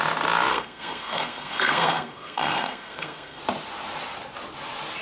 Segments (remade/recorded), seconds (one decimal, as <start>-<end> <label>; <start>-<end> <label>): 0.0-0.5 recorded; 0.5-3.4 remade; 3.4-5.0 recorded